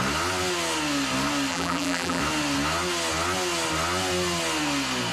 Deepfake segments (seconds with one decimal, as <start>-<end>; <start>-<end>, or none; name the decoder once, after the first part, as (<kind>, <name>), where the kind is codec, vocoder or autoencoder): 1.5-2.2 (vocoder, BigVGAN v2)